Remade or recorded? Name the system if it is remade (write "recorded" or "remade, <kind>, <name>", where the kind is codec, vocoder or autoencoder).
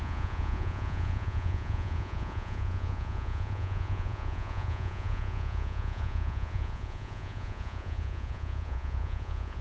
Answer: remade, vocoder, Vocos